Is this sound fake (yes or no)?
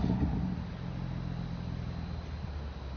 no